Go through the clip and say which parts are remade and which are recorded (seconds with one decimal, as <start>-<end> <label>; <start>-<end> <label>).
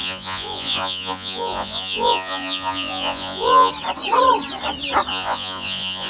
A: 0.0-3.7 remade; 3.7-5.1 recorded; 5.1-6.1 remade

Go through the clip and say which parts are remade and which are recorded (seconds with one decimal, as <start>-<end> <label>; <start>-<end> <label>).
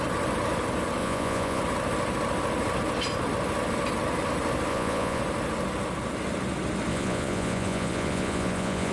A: 0.0-1.0 recorded; 1.0-1.6 remade; 1.6-4.7 recorded; 4.7-5.2 remade; 5.2-6.9 recorded; 6.9-8.9 remade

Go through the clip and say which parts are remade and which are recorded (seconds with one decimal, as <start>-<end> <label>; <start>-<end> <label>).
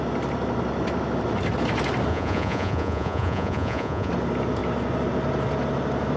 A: 0.0-2.1 recorded; 2.1-4.1 remade; 4.1-6.2 recorded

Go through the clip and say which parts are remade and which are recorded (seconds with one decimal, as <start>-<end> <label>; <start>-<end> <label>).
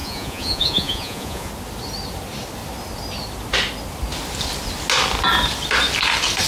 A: 0.0-1.5 remade; 1.5-6.5 recorded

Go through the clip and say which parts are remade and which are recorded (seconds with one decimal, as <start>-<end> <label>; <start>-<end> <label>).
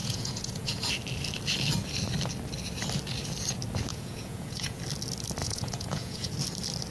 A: 0.0-0.9 remade; 0.9-3.9 recorded; 3.9-4.8 remade; 4.8-5.4 recorded; 5.4-6.3 remade; 6.3-6.9 recorded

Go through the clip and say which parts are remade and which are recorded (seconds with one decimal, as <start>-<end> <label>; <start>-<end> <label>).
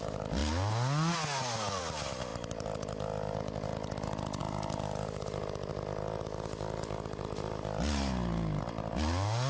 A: 0.0-9.5 recorded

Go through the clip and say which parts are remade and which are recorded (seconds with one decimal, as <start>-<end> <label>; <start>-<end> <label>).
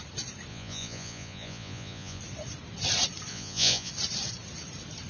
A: 0.0-0.5 recorded; 0.5-2.2 remade; 2.2-3.3 recorded; 3.3-3.9 remade; 3.9-5.1 recorded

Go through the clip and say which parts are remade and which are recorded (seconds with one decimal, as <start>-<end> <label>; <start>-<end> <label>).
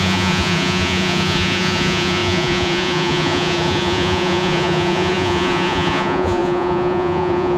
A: 0.0-7.6 remade